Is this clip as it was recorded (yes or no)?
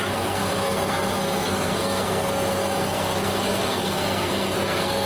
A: no